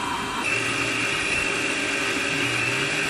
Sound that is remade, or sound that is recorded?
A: recorded